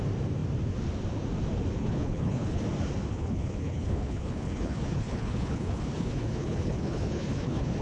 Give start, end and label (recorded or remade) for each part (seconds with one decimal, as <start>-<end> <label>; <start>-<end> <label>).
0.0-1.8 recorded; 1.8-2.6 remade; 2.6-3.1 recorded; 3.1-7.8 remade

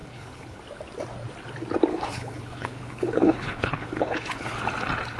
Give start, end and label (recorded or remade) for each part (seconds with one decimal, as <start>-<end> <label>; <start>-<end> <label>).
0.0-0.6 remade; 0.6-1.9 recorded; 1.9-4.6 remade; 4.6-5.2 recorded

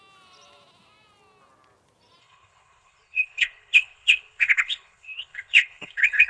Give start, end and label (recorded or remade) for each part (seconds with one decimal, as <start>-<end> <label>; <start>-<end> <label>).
0.0-2.2 recorded; 2.2-6.3 remade

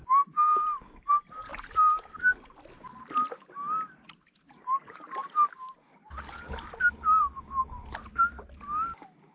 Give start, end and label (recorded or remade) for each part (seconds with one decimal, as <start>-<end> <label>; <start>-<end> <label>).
0.0-9.3 recorded

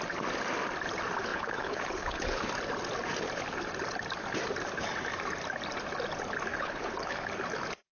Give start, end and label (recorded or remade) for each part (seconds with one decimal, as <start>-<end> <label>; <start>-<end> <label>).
0.0-1.3 recorded; 1.3-2.5 remade; 2.5-6.5 recorded; 6.5-7.3 remade; 7.3-7.9 recorded